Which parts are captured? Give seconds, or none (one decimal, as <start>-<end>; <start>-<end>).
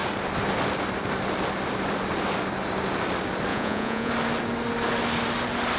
0.0-3.5; 4.1-5.8